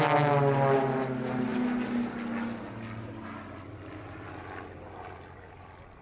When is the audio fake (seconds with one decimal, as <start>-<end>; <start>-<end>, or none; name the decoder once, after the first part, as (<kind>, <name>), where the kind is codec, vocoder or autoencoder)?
none

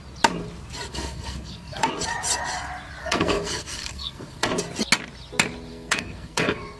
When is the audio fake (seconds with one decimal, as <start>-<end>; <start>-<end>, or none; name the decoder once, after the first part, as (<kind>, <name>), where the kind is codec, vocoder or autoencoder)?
0.9-1.9 (codec, SNAC); 3.0-4.6; 5.7-6.8